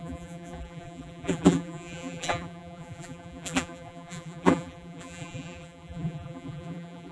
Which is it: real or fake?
fake